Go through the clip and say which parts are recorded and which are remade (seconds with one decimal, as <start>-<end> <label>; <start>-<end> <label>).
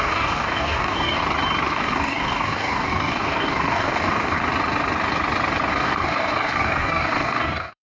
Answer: 0.0-1.2 remade; 1.2-1.7 recorded; 1.7-4.4 remade; 4.4-5.7 recorded; 5.7-7.9 remade